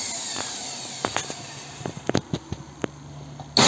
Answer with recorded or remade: recorded